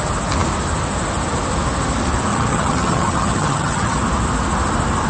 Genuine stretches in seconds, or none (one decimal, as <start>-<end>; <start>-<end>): 0.0-2.3; 4.0-5.1